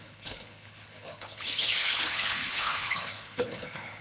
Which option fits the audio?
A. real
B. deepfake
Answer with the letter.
B